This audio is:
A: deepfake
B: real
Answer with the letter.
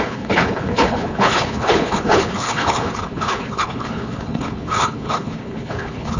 A